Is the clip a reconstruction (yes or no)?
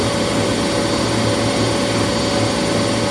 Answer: no